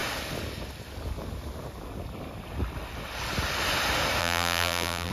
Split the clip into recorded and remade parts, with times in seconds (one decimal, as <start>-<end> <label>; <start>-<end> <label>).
0.0-4.2 recorded; 4.2-5.1 remade